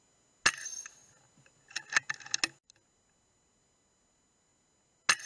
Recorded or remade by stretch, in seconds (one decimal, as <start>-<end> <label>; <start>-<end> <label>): 0.0-5.3 recorded